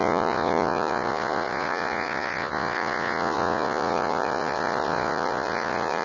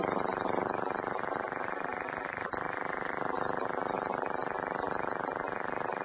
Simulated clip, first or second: first